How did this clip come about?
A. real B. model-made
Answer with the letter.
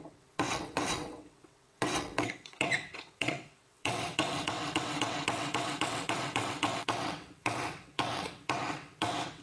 B